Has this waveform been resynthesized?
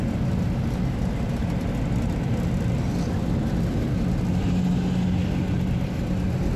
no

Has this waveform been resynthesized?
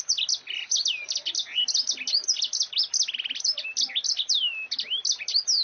no